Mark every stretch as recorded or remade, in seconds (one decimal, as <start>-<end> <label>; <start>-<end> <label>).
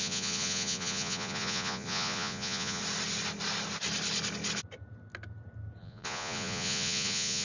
0.0-2.8 remade; 2.8-5.8 recorded; 5.8-7.4 remade